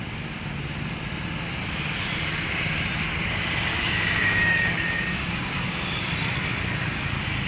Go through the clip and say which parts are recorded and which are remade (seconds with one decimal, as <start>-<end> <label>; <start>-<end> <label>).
0.0-3.7 recorded; 3.7-6.1 remade; 6.1-7.5 recorded